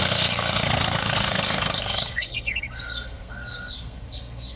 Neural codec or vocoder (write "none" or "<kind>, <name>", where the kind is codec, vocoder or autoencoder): codec, SNAC